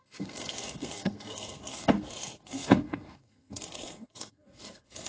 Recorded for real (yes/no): no